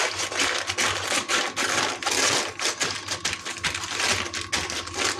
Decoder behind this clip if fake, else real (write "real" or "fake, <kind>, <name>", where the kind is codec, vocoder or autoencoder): real